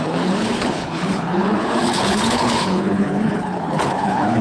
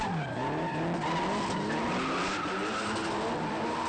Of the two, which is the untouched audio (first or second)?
second